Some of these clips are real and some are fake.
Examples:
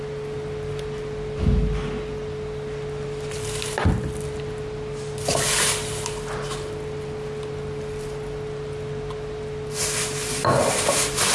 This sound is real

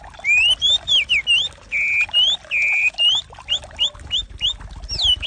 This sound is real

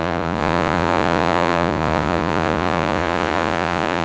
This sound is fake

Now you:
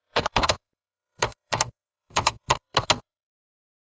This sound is fake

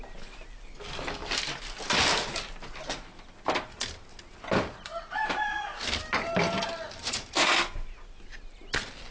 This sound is real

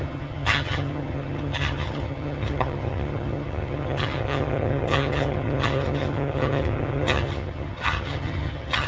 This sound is fake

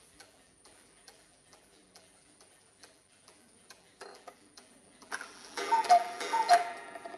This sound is fake